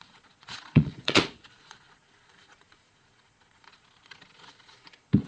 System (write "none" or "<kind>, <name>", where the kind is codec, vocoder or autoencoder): vocoder, Vocos